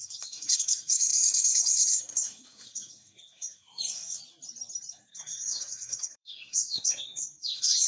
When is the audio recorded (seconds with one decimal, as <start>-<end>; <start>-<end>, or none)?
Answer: 4.2-4.9